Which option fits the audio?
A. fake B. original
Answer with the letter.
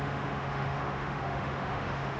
A